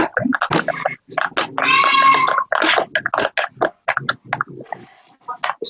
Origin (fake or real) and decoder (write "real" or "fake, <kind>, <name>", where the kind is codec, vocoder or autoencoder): real